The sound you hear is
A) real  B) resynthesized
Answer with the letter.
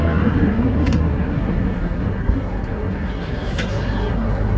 B